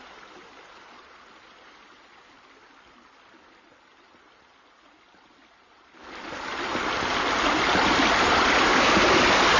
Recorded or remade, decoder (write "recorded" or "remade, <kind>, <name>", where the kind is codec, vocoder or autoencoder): recorded